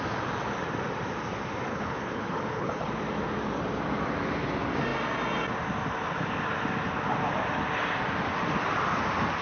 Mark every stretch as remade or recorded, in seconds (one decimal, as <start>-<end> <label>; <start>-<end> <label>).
0.0-1.7 recorded; 1.7-2.9 remade; 2.9-9.4 recorded